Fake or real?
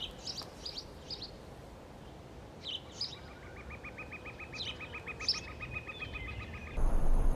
real